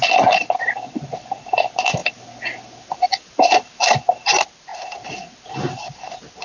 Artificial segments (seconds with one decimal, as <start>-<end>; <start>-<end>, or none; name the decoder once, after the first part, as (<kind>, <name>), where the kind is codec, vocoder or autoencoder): none